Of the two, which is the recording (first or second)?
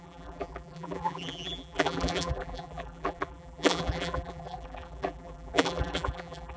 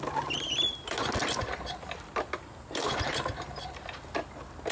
second